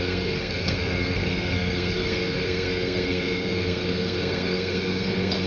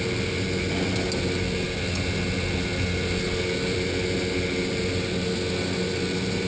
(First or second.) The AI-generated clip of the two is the first